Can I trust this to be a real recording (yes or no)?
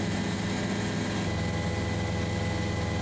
yes